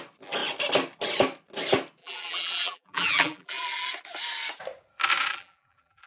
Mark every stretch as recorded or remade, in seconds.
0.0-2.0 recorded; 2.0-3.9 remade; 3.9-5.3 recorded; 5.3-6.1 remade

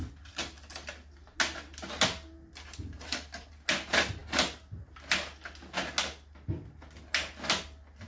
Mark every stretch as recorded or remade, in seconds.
0.0-8.1 recorded